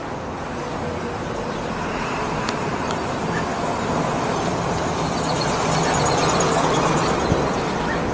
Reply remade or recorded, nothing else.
recorded